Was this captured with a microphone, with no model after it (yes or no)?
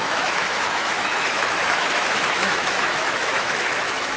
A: no